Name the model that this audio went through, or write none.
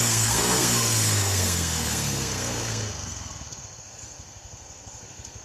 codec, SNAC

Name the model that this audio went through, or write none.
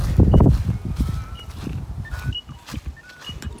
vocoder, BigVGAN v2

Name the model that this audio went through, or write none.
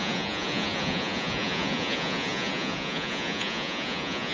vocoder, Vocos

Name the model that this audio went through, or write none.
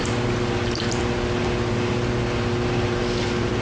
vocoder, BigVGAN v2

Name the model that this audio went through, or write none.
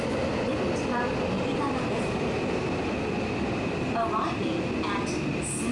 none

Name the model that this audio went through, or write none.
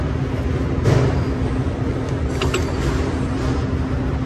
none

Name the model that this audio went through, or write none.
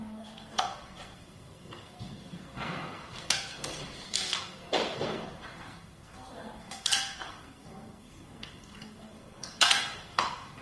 codec, SNAC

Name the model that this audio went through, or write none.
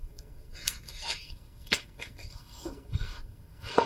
codec, SNAC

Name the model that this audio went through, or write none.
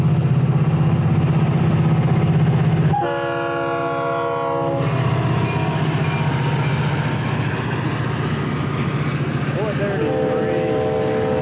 none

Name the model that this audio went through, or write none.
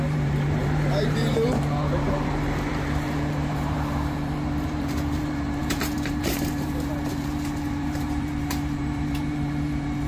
vocoder, BigVGAN v2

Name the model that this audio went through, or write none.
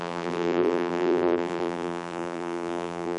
vocoder, BigVGAN v2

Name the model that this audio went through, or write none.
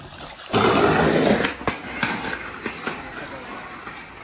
none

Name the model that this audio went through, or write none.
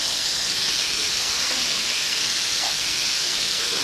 codec, SNAC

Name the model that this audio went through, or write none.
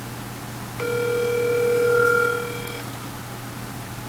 none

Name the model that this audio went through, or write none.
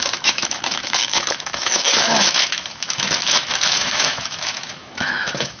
autoencoder, DAC-VAE